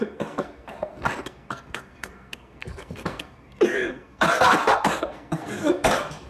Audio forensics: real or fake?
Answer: fake